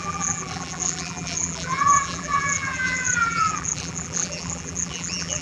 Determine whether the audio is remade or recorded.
remade